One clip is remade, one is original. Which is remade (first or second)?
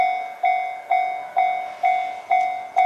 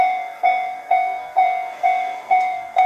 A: second